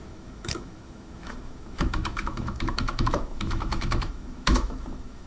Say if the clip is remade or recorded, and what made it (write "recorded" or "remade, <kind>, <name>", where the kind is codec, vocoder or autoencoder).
remade, autoencoder, DAC-VAE